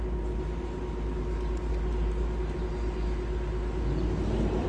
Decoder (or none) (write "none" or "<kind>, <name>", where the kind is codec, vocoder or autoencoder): none